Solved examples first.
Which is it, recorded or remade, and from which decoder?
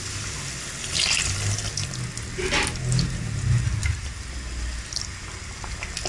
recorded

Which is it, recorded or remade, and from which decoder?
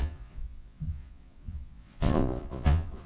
remade, vocoder, Vocos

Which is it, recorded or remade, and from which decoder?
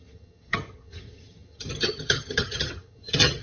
remade, vocoder, HiFi-GAN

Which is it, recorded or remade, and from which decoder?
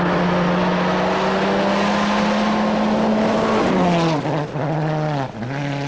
recorded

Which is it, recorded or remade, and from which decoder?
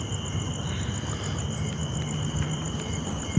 recorded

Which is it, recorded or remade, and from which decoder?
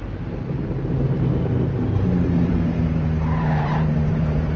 remade, vocoder, BigVGAN v2